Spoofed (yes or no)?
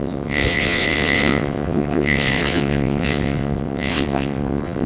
yes